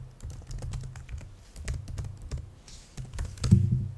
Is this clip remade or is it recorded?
recorded